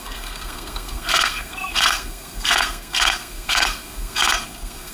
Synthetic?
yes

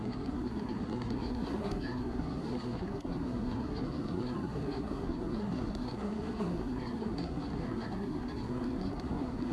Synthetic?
yes